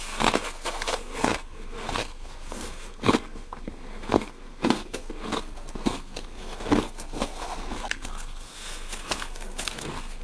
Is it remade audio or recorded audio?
remade